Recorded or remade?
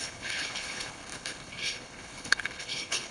remade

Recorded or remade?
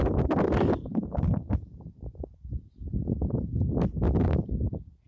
recorded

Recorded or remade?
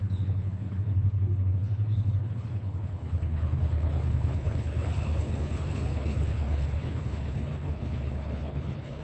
remade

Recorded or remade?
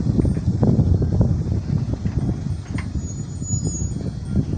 recorded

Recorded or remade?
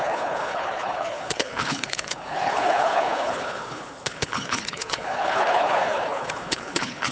remade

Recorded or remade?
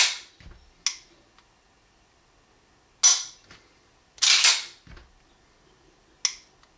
recorded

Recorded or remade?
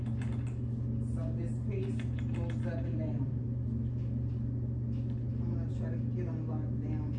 recorded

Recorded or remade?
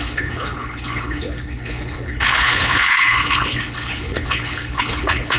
remade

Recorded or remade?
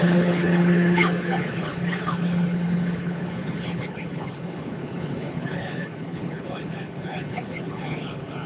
remade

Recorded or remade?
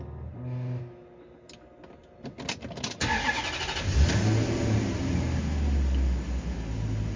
recorded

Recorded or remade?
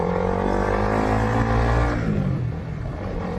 recorded